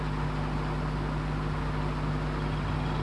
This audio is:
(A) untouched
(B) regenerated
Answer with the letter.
A